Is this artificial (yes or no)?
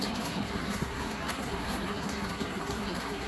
yes